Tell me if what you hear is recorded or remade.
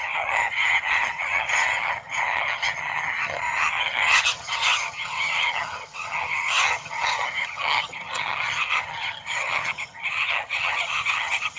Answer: remade